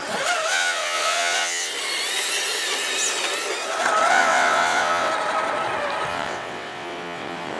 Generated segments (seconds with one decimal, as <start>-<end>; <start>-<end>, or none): 0.5-1.7; 4.1-5.1; 6.1-7.6